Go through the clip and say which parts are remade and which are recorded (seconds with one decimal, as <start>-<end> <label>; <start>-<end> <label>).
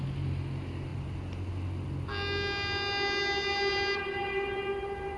0.0-5.2 recorded